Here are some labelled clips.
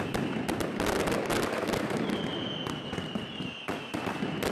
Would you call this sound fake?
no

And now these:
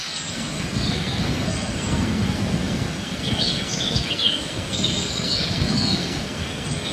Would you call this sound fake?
yes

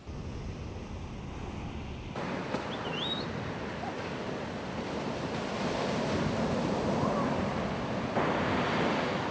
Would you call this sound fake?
no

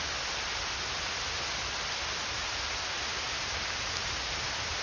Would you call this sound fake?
no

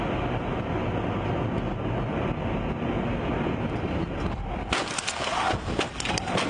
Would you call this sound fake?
no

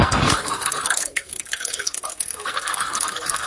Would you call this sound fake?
yes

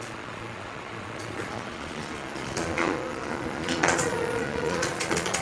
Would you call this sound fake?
yes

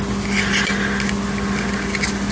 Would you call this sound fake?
no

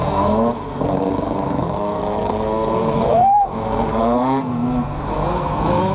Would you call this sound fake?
yes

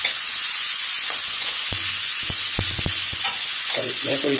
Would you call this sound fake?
yes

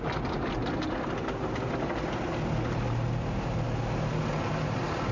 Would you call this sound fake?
no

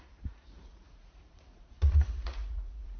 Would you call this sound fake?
yes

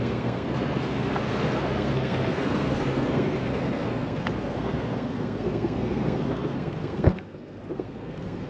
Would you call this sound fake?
yes